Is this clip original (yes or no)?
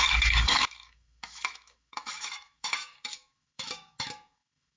no